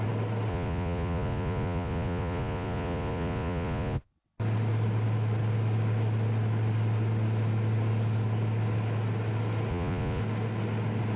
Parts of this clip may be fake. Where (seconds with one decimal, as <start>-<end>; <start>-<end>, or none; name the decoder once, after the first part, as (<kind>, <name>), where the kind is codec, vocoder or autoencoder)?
0.5-4.1 (vocoder, Vocos); 9.7-10.2